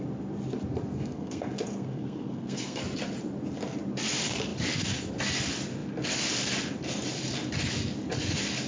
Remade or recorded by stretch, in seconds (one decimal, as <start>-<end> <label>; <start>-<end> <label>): 0.0-0.9 recorded; 0.9-2.8 remade; 2.8-8.7 recorded

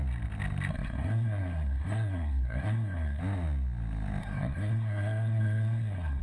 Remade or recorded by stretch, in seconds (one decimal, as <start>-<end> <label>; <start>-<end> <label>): 0.0-0.7 recorded; 0.7-3.2 remade; 3.2-4.2 recorded; 4.2-6.2 remade

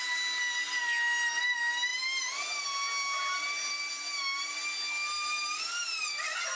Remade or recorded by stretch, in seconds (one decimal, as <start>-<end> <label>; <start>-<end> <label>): 0.0-6.5 recorded

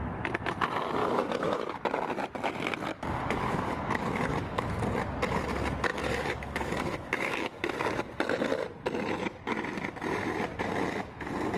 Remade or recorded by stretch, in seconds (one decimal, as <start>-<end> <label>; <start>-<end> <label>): 0.0-1.0 recorded; 1.0-1.8 remade; 1.8-2.9 recorded; 2.9-4.7 remade; 4.7-5.9 recorded; 5.9-7.6 remade; 7.6-11.6 recorded

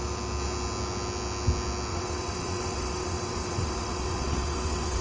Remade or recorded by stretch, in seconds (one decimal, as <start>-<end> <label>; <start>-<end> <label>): 0.0-1.9 recorded; 1.9-5.0 remade

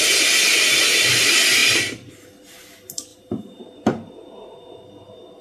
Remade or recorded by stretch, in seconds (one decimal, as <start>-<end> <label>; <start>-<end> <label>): 0.0-1.6 recorded; 1.6-2.3 remade; 2.3-3.1 recorded; 3.1-4.1 remade; 4.1-5.4 recorded